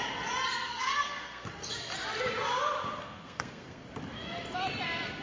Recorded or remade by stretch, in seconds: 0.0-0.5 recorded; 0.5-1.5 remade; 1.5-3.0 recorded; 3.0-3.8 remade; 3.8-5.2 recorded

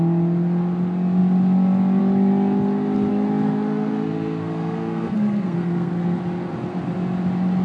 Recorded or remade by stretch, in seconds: 0.0-3.1 recorded; 3.1-6.2 remade; 6.2-7.6 recorded

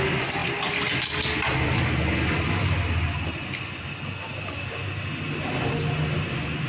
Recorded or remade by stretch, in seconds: 0.0-6.7 recorded

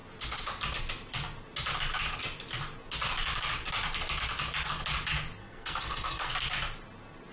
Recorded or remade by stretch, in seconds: 0.0-5.4 recorded; 5.4-6.3 remade; 6.3-7.3 recorded